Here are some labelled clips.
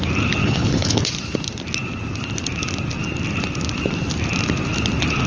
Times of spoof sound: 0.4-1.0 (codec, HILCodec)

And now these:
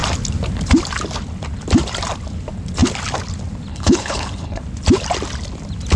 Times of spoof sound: 3.7-4.6 (codec, HILCodec)